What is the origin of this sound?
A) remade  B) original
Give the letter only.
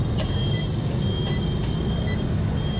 B